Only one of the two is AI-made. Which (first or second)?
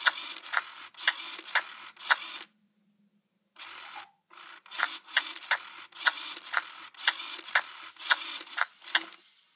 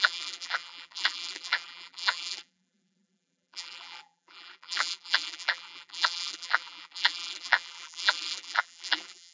second